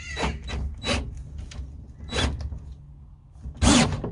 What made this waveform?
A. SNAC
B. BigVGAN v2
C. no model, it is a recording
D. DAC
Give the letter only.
C